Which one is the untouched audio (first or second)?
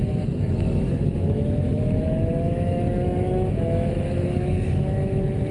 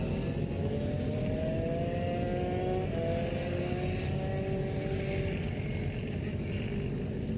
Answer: second